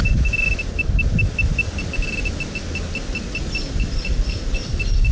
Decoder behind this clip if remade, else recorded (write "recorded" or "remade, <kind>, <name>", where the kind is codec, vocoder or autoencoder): recorded